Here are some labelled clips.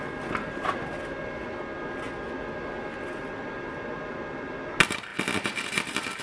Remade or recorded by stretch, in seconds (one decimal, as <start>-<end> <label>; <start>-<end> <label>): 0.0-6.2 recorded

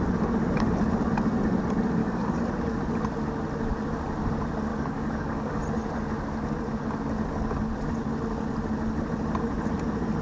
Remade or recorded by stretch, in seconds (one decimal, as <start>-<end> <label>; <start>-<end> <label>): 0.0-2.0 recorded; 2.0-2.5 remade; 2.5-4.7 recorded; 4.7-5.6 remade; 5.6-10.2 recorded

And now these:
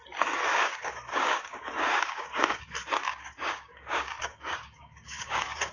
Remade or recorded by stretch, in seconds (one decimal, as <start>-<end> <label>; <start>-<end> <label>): 0.0-0.5 recorded; 0.5-2.6 remade; 2.6-3.1 recorded; 3.1-5.7 remade

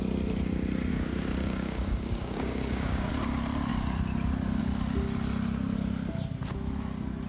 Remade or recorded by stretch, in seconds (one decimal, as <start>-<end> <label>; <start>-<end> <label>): 0.0-0.9 recorded; 0.9-3.1 remade; 3.1-7.3 recorded